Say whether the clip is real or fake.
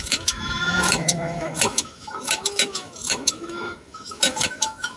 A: fake